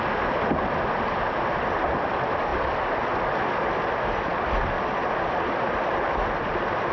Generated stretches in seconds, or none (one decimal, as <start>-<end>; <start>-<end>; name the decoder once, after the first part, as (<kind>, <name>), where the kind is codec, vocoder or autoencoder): none